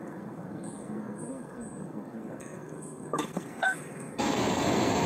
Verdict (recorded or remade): remade